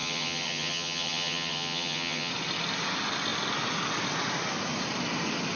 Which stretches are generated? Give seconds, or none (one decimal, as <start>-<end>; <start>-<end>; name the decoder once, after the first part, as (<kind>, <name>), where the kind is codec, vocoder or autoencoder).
0.0-2.3 (vocoder, HiFi-GAN)